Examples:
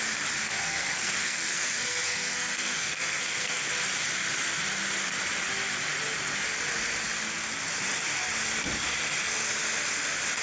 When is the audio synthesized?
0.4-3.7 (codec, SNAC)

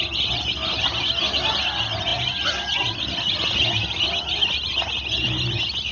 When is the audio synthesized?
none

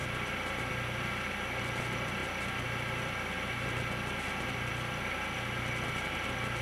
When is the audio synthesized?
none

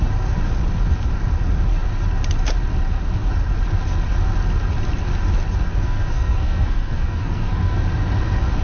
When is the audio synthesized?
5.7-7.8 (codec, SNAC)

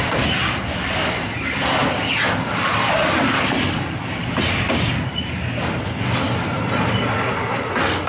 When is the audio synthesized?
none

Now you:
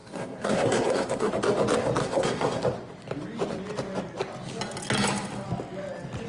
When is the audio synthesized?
0.0-1.3 (codec, SNAC); 2.0-2.6

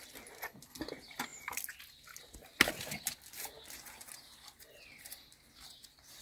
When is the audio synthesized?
none